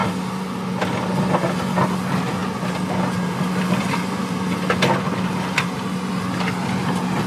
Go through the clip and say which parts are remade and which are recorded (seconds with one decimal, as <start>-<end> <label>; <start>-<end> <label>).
0.0-7.3 recorded